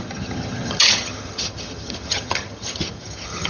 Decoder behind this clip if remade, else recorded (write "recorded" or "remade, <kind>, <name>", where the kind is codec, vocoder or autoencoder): remade, vocoder, HiFi-GAN